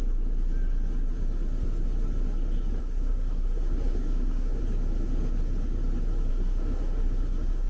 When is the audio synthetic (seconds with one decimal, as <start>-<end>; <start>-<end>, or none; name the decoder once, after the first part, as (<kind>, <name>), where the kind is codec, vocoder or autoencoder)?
2.8-4.6 (codec, SNAC); 6.3-7.7